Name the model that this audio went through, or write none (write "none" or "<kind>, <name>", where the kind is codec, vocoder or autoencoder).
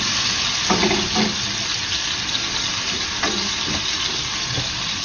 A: none